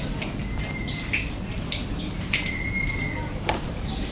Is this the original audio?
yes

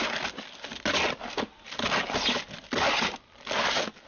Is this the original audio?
yes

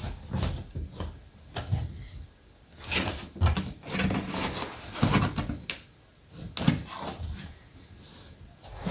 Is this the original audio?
yes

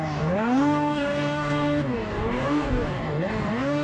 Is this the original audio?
no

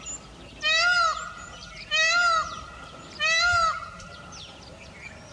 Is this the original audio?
yes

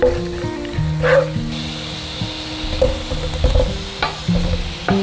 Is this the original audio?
yes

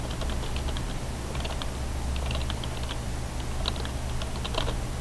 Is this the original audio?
yes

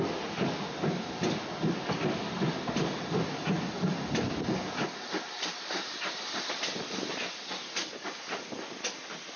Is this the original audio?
yes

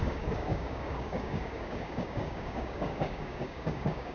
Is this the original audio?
no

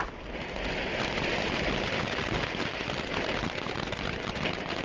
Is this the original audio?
yes